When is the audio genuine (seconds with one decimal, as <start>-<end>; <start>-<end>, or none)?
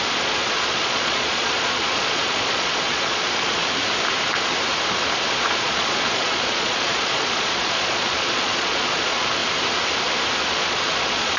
3.6-5.3; 9.4-10.5